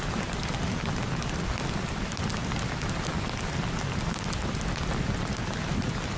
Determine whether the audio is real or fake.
real